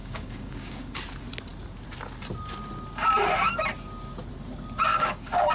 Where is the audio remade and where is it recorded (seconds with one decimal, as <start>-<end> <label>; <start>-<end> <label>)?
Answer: 0.0-1.0 remade; 1.0-4.9 recorded; 4.9-5.5 remade